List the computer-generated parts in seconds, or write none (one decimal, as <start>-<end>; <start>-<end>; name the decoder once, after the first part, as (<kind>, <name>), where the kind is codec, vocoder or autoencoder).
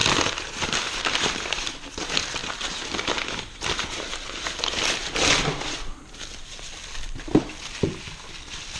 none